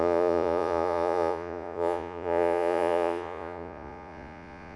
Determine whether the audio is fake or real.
fake